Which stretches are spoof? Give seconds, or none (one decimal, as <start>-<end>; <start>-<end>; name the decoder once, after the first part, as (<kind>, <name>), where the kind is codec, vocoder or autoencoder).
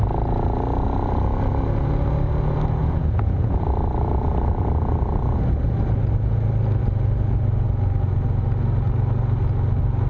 2.8-3.6 (vocoder, Vocos)